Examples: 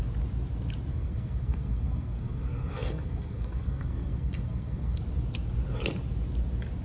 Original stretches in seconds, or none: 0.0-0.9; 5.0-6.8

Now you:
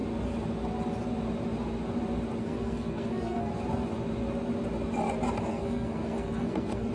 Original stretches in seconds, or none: 0.0-2.4; 3.5-5.5

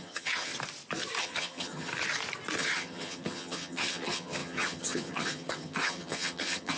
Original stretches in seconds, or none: 0.5-1.2; 1.9-2.6

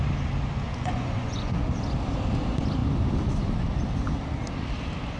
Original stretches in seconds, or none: 0.0-0.7; 1.6-5.2

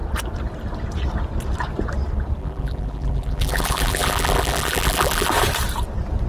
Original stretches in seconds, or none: 0.0-2.4; 5.3-6.3

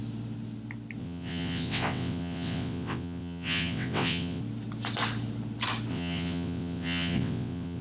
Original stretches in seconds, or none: 0.0-1.0; 4.4-5.9